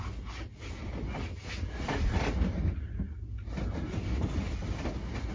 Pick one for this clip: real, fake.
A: real